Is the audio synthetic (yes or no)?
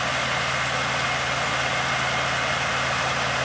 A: no